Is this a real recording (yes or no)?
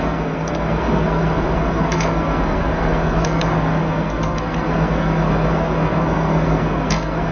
no